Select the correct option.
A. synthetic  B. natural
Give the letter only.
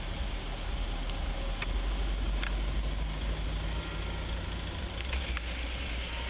B